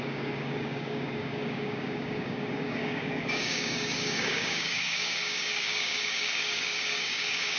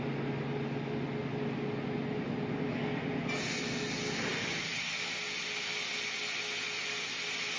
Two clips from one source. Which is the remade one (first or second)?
first